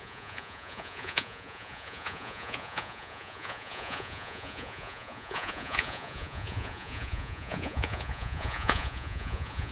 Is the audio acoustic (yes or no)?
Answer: no